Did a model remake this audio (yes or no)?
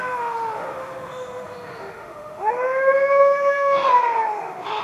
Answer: yes